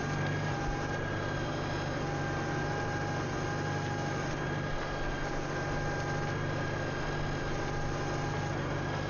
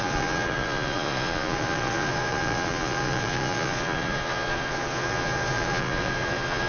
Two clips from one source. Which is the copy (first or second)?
second